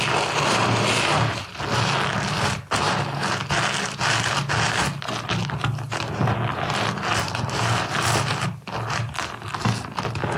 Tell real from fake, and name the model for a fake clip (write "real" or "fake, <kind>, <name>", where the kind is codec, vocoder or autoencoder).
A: real